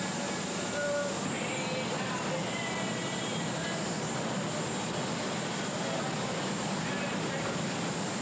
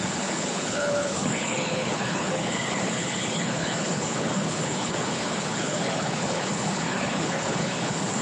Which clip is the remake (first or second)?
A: second